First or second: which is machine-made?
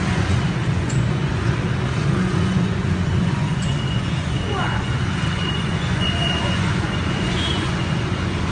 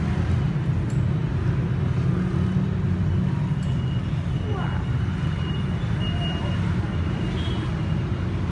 first